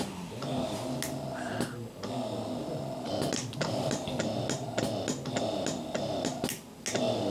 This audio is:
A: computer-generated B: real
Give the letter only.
B